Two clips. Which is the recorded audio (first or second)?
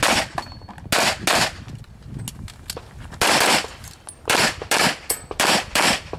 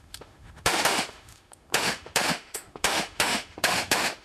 first